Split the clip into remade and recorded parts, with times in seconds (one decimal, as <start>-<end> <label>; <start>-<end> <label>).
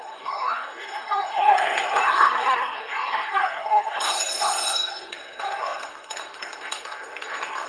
0.0-7.7 remade